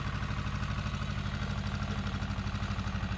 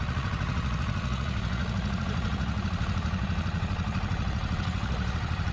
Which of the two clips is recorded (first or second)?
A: first